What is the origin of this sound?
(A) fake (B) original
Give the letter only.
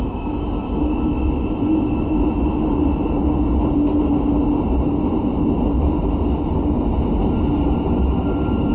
B